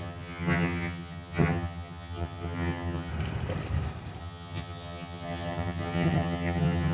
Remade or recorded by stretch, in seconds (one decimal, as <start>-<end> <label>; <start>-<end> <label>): 0.0-3.1 remade; 3.1-4.2 recorded; 4.2-6.9 remade